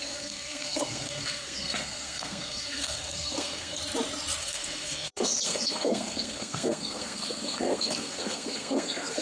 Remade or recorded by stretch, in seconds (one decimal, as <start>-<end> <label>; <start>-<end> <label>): 0.0-3.8 remade; 3.8-4.4 recorded; 4.4-9.2 remade